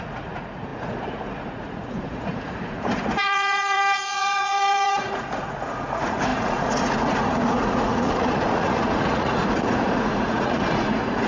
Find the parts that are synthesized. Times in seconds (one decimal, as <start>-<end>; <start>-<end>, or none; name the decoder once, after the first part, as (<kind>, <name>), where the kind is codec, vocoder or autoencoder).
0.0-11.3 (vocoder, Vocos)